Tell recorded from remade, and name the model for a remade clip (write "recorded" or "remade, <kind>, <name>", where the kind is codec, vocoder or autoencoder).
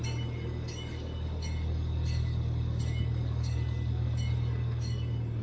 remade, codec, DAC